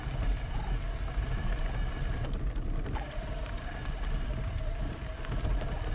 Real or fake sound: real